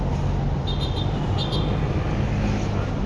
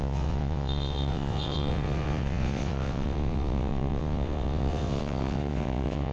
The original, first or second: first